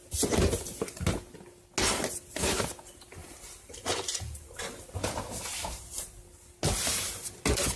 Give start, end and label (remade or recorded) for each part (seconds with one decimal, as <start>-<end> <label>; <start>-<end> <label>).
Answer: 0.0-3.2 recorded; 3.2-4.7 remade; 4.7-5.5 recorded; 5.5-6.1 remade; 6.1-7.8 recorded